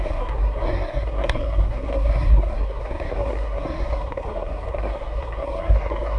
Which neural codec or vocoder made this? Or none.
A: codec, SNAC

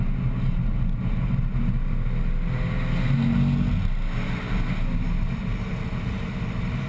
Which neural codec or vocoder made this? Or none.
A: none